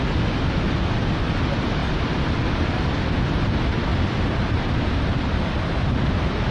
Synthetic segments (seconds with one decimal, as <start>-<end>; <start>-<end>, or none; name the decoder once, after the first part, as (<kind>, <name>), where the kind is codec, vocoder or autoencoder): none